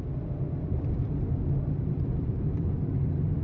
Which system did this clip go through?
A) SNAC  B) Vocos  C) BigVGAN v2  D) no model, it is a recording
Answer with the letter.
D